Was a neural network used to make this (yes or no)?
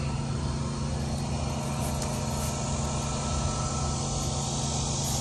no